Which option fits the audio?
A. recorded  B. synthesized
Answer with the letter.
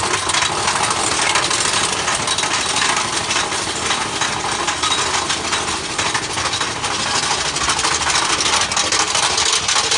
A